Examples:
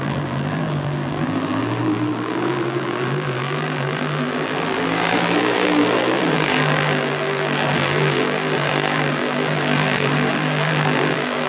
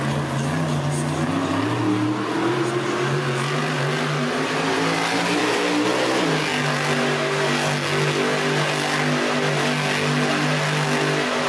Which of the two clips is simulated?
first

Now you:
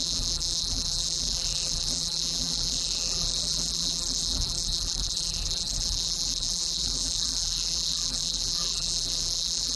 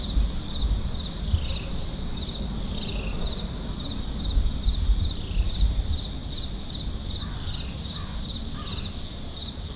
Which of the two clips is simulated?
first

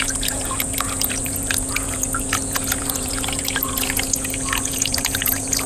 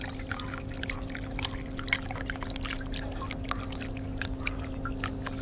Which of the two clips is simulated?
first